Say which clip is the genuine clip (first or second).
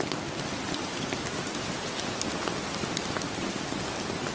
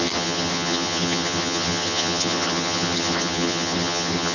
first